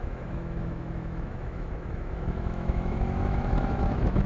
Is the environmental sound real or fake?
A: fake